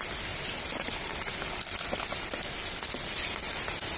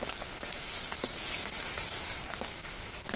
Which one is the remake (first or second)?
second